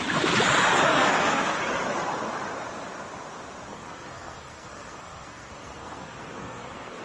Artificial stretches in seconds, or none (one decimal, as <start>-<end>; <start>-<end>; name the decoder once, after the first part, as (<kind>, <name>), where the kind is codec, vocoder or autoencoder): 0.9-1.6 (codec, SNAC); 3.7-7.0